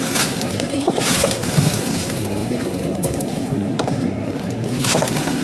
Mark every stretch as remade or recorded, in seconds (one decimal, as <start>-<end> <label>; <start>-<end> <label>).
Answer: 0.0-5.4 remade